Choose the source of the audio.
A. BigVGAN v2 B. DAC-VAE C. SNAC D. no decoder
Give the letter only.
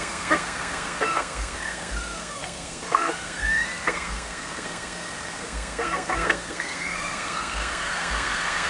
C